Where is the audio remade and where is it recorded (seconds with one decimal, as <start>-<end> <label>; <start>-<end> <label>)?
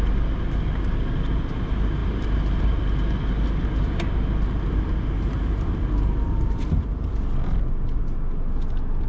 0.0-9.1 recorded